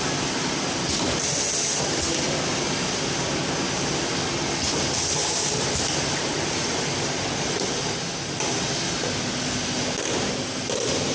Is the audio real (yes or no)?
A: yes